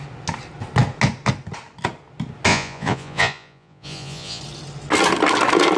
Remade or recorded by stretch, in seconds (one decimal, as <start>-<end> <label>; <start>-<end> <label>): 0.0-2.5 recorded; 2.5-4.4 remade; 4.4-5.8 recorded